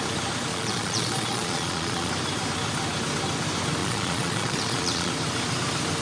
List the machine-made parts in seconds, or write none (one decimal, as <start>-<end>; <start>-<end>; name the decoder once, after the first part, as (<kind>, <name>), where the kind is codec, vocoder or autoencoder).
0.5-2.1 (vocoder, Vocos); 3.8-5.1